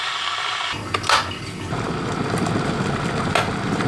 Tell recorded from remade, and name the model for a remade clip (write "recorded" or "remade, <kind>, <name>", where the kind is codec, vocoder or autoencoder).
recorded